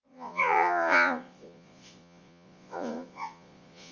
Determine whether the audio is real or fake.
fake